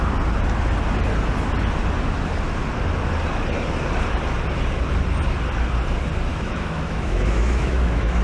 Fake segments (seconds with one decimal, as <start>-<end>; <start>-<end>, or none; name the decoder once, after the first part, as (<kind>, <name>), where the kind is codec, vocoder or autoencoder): 6.3-8.2 (autoencoder, DAC-VAE)